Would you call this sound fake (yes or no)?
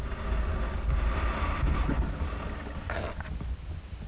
no